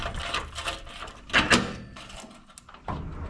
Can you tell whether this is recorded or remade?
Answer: recorded